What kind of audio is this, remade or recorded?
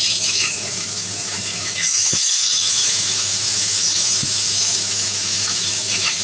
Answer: remade